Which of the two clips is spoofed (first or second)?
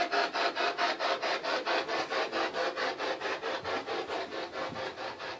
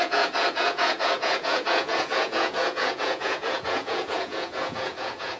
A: second